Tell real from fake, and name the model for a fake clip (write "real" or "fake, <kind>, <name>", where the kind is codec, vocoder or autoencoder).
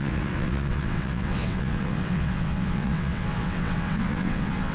fake, vocoder, WaveNeXt